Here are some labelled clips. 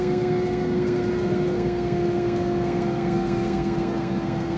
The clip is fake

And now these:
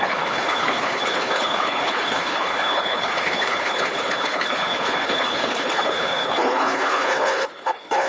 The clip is fake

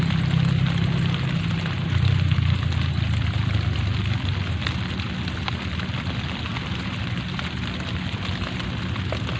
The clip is real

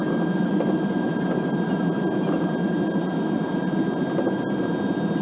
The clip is real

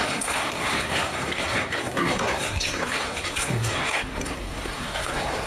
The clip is fake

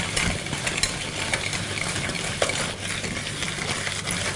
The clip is real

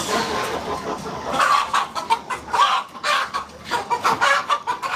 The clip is fake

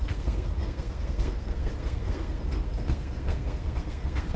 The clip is fake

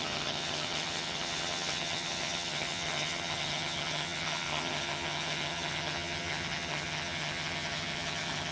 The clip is fake